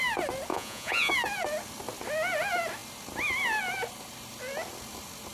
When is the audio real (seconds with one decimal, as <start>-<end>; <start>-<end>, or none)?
0.0-0.5; 1.1-5.3